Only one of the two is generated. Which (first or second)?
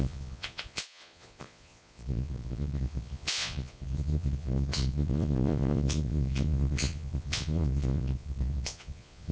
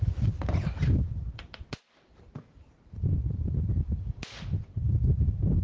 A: first